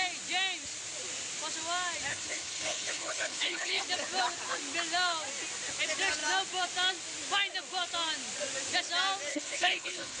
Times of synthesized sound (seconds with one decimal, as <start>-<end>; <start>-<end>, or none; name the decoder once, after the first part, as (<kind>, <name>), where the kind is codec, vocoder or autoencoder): 2.1-3.8 (codec, HILCodec); 9.3-10.2